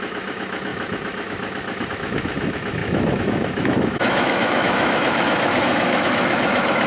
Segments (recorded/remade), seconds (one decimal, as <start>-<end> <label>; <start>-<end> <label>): 0.0-6.9 remade